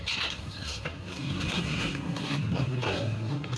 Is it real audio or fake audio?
fake